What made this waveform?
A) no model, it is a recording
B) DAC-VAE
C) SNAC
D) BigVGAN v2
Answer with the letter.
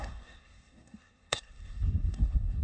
C